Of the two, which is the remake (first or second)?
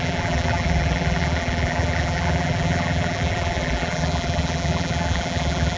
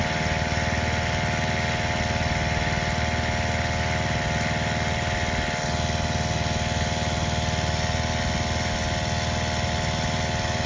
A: first